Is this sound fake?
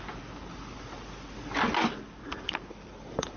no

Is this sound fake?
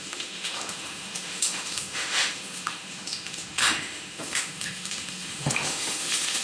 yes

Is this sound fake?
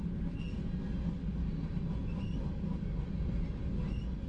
no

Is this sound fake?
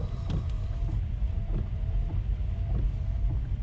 no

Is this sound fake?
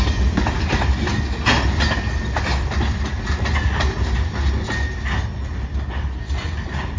no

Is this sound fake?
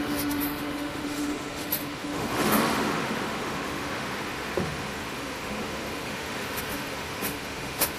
yes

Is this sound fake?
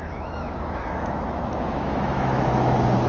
yes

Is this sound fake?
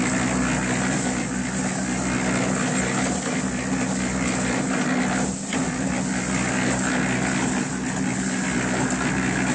no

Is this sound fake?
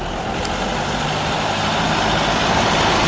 no